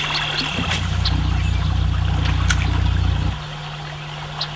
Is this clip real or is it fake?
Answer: real